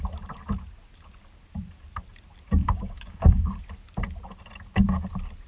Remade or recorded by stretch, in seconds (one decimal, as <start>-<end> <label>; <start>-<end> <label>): 0.0-2.6 recorded; 2.6-3.6 remade; 3.6-5.5 recorded